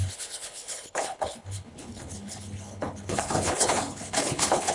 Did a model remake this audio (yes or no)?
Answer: yes